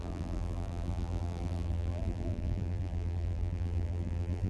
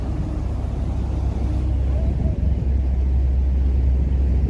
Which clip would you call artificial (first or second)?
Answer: first